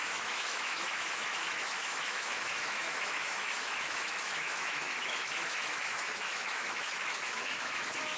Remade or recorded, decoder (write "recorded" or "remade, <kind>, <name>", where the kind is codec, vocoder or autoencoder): remade, autoencoder, DAC-VAE